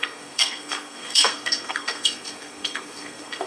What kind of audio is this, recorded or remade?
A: remade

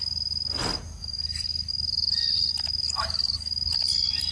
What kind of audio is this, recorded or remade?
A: recorded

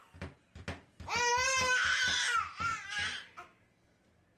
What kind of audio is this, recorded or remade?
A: recorded